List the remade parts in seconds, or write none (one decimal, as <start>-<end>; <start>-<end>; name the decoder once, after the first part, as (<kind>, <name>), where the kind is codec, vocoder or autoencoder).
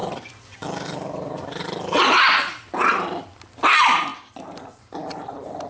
0.0-3.4 (vocoder, BigVGAN v2)